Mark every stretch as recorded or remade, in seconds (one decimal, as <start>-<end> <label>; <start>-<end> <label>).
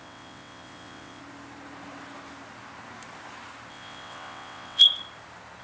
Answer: 0.0-1.2 remade; 1.2-3.7 recorded; 3.7-4.8 remade; 4.8-5.6 recorded